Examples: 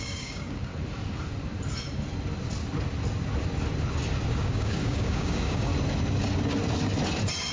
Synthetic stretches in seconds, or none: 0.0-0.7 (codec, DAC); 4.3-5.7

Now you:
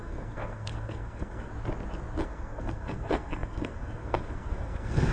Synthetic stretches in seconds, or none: 0.0-1.5 (codec, SNAC); 2.2-5.1